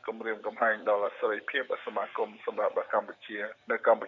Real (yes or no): no